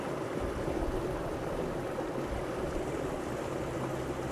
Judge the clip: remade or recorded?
recorded